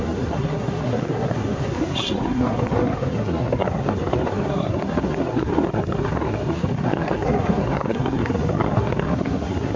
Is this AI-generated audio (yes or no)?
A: yes